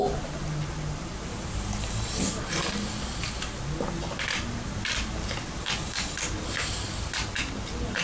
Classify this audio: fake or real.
real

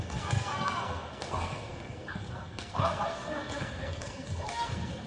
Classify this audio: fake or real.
fake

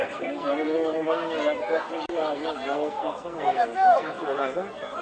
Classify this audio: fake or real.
fake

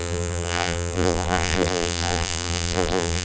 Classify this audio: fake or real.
fake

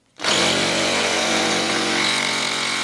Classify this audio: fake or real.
fake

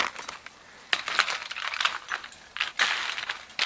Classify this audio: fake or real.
real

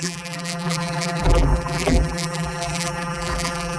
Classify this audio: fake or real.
fake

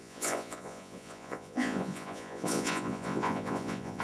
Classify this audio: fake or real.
fake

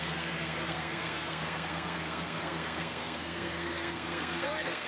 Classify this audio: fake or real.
fake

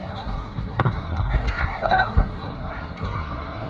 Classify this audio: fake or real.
fake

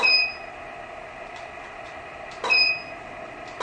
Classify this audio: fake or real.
real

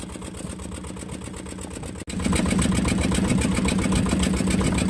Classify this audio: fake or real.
real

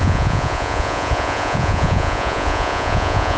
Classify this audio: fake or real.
fake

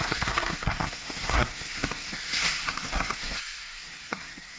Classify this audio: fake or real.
fake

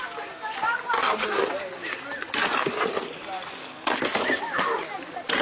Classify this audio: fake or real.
real